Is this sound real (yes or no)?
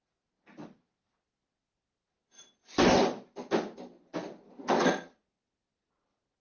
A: yes